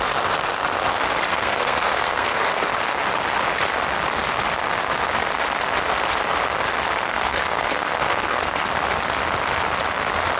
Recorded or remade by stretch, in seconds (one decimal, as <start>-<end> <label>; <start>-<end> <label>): 0.0-1.3 recorded; 1.3-2.7 remade; 2.7-7.1 recorded; 7.1-8.7 remade; 8.7-10.4 recorded